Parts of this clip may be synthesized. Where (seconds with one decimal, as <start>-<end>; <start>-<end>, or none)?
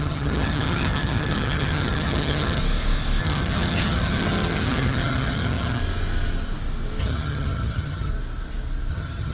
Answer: 0.0-2.6; 3.2-5.8; 7.0-8.1; 8.9-9.3